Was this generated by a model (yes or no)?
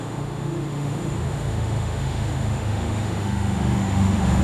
yes